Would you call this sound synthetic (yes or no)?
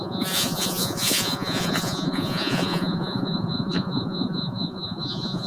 yes